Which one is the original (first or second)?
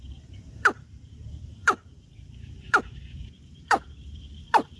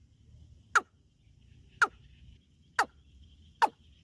second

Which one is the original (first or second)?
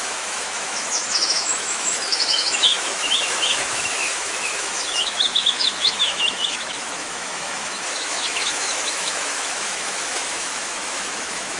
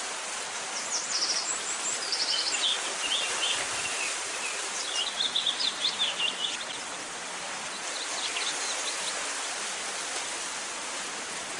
second